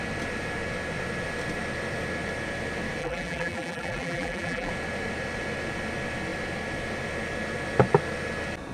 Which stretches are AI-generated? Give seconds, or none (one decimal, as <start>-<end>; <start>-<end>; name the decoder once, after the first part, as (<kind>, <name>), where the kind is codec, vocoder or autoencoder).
3.0-4.7 (vocoder, BigVGAN v2)

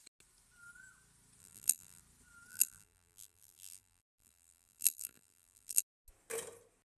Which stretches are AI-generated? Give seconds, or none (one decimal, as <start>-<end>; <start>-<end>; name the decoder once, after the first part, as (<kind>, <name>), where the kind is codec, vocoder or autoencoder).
1.4-2.0 (vocoder, BigVGAN v2); 2.5-5.8

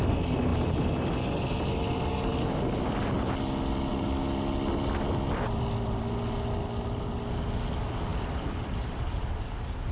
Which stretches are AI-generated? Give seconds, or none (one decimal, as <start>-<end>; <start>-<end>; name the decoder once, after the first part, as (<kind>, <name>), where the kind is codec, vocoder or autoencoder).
none